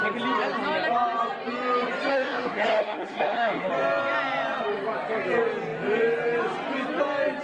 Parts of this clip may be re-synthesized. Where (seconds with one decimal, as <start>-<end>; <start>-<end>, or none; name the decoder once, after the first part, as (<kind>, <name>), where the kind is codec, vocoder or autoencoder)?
2.1-3.7 (codec, SNAC)